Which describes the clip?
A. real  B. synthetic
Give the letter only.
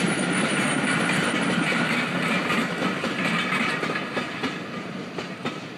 A